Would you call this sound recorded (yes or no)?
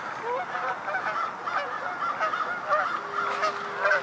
yes